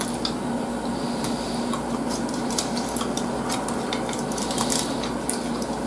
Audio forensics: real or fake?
real